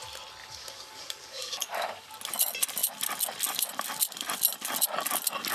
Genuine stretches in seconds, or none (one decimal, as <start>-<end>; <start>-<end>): 0.0-0.4; 2.1-5.5